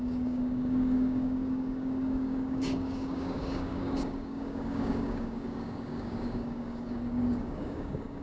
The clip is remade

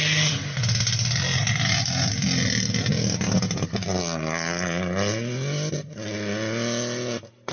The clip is recorded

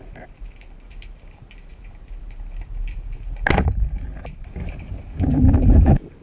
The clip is recorded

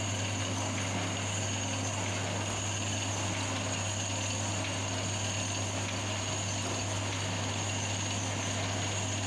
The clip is recorded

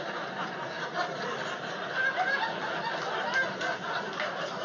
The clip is recorded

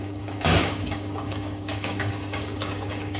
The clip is remade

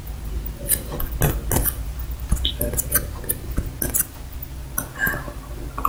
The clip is recorded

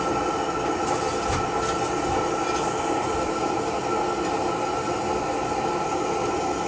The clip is recorded